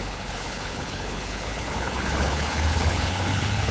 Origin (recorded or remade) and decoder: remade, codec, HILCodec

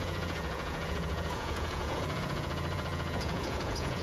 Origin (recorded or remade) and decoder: remade, vocoder, Vocos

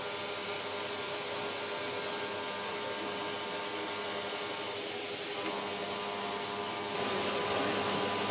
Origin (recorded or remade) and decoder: recorded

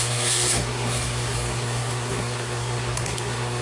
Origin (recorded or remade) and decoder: remade, codec, SNAC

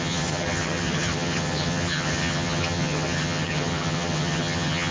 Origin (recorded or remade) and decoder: remade, vocoder, HiFi-GAN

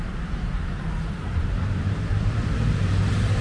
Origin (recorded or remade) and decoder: remade, vocoder, BigVGAN v2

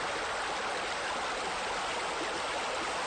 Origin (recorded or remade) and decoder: recorded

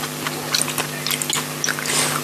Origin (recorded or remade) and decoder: recorded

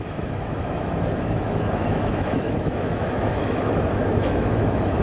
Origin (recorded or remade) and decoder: remade, autoencoder, DAC-VAE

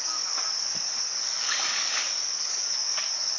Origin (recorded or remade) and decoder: remade, codec, DAC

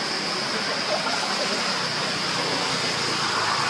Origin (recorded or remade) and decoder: recorded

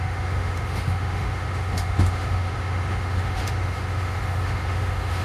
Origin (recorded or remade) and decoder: remade, autoencoder, DAC-VAE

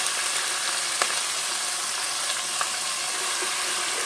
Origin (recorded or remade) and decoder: recorded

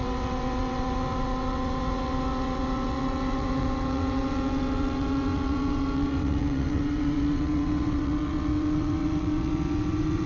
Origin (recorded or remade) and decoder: remade, vocoder, WaveNeXt